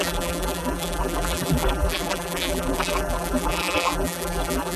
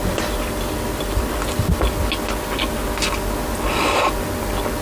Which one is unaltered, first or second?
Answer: second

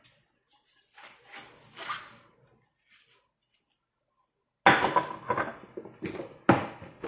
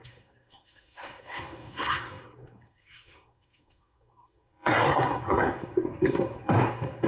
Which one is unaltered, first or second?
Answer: first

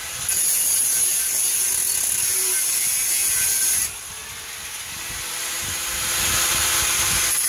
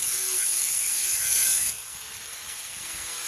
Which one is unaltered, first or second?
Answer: first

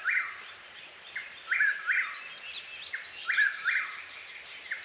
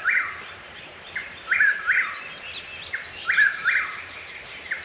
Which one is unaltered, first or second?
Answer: first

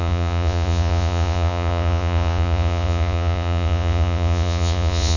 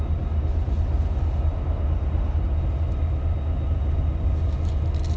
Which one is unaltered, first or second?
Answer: second